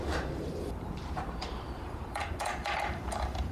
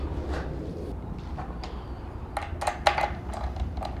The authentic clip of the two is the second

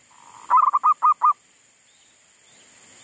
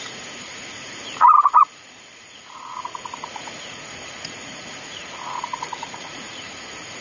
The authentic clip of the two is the first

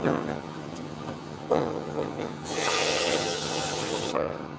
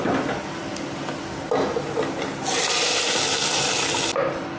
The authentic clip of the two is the second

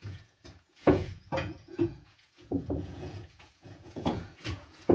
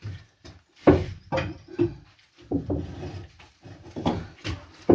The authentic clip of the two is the second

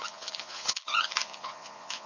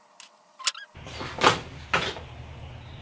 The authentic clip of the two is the second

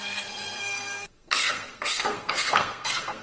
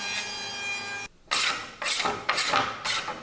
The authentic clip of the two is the second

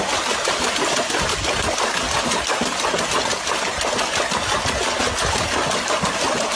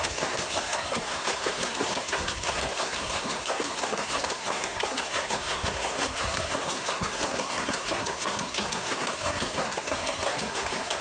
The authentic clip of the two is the first